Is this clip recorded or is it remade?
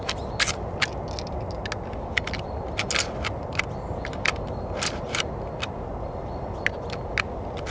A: recorded